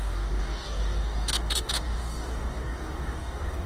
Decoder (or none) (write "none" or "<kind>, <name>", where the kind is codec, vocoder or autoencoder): codec, DAC